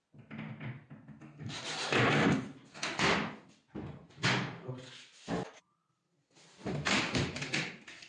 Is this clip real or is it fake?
real